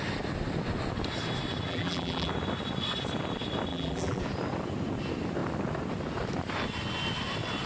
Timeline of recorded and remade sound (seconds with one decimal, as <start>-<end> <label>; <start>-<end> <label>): 0.0-1.7 recorded; 1.7-2.3 remade; 2.3-3.7 recorded; 3.7-4.2 remade; 4.2-7.7 recorded